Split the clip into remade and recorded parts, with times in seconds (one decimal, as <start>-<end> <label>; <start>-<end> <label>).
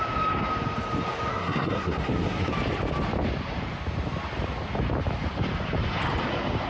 0.0-1.3 recorded; 1.3-2.5 remade; 2.5-6.7 recorded